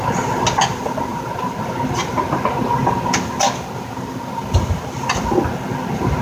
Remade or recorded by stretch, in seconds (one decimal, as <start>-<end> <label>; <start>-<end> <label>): 0.0-6.2 recorded